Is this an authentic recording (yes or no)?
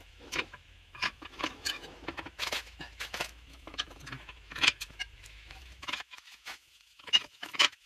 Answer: no